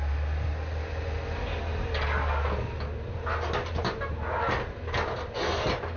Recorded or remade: recorded